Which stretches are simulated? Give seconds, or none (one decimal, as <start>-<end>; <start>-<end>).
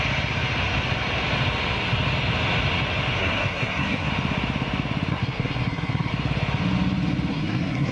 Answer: 3.2-4.1; 5.1-6.1; 7.3-7.9